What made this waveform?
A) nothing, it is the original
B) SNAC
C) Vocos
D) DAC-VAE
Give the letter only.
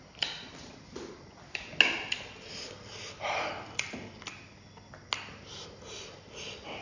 A